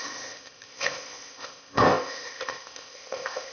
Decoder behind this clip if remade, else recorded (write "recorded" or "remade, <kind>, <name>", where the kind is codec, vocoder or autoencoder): remade, codec, ZipCodec